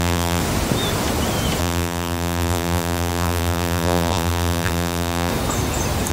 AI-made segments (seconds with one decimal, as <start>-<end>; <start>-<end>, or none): 0.0-0.4; 1.6-5.3